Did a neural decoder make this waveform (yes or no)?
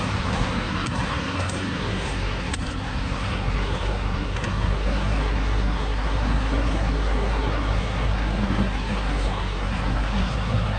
yes